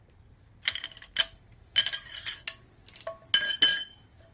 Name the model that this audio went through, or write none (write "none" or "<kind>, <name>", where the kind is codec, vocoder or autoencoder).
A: none